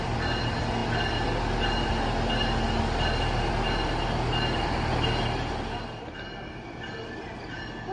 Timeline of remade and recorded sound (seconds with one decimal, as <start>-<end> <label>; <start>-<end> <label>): 0.0-7.9 recorded

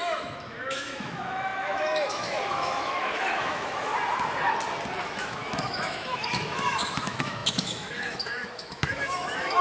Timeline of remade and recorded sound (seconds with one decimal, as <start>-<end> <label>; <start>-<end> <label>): 0.0-3.9 remade; 3.9-5.0 recorded; 5.0-9.6 remade

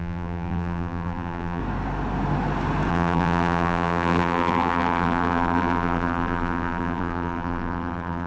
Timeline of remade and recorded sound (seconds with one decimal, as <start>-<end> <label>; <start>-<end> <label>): 0.0-1.6 remade; 1.6-2.9 recorded; 2.9-8.3 remade

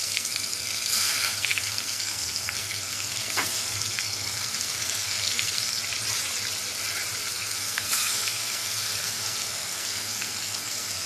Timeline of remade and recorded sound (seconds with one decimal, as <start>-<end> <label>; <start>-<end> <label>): 0.0-5.8 remade; 5.8-7.3 recorded; 7.3-11.1 remade

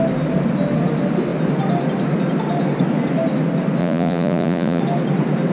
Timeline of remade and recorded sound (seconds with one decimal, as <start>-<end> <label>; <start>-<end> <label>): 0.0-3.8 recorded; 3.8-4.8 remade; 4.8-5.5 recorded

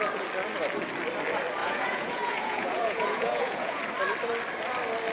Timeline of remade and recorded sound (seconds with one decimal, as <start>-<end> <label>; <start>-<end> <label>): 0.0-1.6 recorded; 1.6-3.8 remade; 3.8-5.1 recorded

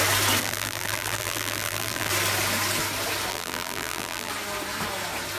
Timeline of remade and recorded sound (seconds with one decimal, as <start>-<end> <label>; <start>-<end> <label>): 0.0-0.4 recorded; 0.4-2.1 remade; 2.1-3.3 recorded; 3.3-4.3 remade; 4.3-5.4 recorded

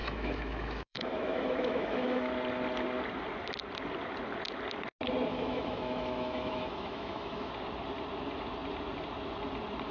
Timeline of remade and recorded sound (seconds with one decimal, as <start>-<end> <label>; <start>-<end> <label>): 0.0-2.3 remade; 2.3-5.3 recorded; 5.3-7.5 remade; 7.5-9.9 recorded